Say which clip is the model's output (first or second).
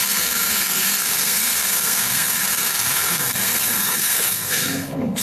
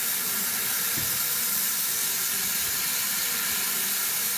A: first